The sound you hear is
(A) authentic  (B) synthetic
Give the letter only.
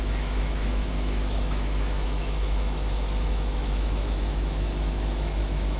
B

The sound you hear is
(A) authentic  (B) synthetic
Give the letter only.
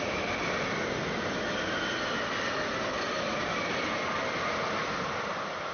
A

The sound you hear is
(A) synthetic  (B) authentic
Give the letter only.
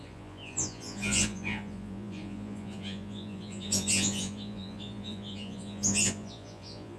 A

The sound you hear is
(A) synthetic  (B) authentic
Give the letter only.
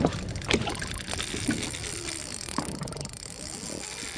B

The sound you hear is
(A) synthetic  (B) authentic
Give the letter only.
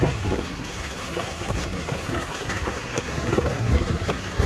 A